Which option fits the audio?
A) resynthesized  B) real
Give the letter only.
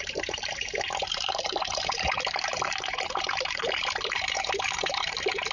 A